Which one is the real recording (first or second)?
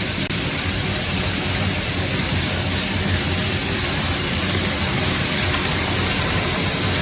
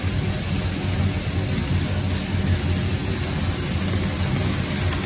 second